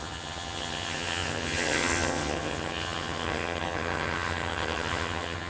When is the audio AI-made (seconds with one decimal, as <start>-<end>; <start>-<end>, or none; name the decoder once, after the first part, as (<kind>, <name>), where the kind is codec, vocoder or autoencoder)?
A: 0.0-5.5 (vocoder, HiFi-GAN)